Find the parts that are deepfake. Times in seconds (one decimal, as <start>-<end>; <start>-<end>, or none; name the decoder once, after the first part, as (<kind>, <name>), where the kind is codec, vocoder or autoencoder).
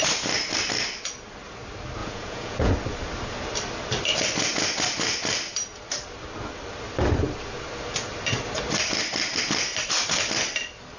2.0-2.7 (vocoder, Vocos)